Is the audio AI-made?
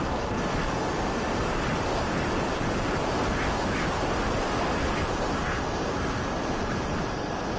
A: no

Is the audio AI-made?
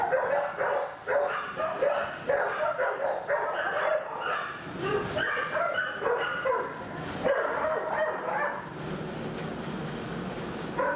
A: no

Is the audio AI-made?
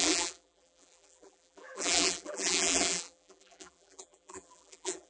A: yes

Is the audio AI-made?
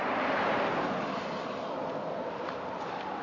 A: no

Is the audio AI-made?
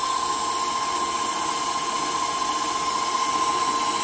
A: no